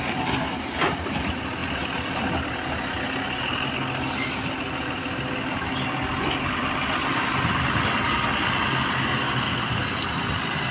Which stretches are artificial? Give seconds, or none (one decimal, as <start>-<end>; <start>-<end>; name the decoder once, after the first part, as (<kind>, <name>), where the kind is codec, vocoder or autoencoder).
none